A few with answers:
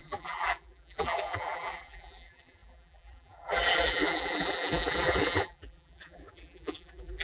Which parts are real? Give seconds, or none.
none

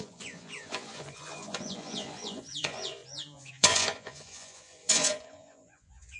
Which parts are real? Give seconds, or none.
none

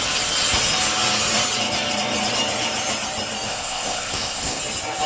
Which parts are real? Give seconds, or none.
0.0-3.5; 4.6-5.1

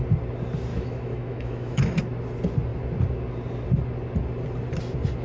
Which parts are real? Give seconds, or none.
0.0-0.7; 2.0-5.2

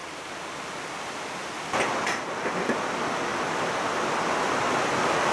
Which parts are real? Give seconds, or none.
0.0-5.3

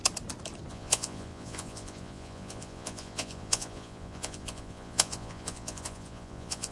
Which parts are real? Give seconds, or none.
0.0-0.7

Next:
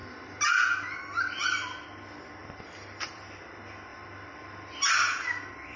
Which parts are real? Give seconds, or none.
0.0-2.4; 3.4-3.9